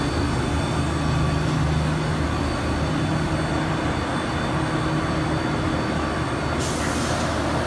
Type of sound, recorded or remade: recorded